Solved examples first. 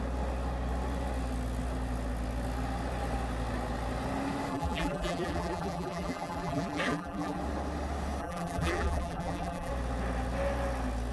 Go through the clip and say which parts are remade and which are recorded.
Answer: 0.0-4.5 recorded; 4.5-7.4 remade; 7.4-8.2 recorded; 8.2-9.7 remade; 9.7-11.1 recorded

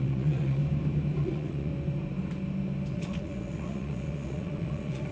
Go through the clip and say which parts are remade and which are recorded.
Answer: 0.0-0.6 remade; 0.6-1.2 recorded; 1.2-1.7 remade; 1.7-2.9 recorded; 2.9-5.1 remade

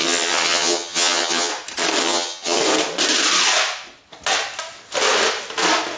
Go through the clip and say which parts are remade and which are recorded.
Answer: 0.0-1.5 remade; 1.5-2.0 recorded; 2.0-2.6 remade; 2.6-6.0 recorded

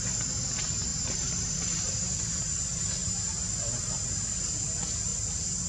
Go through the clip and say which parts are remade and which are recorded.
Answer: 0.0-0.9 recorded; 0.9-2.4 remade; 2.4-3.0 recorded; 3.0-4.0 remade; 4.0-5.7 recorded